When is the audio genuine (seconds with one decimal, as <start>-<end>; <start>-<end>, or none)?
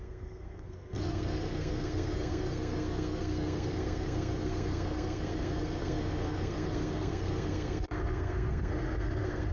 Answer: none